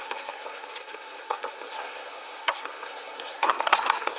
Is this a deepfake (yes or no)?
yes